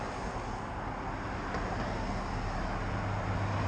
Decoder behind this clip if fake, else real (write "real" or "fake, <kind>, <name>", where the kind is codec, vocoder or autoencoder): real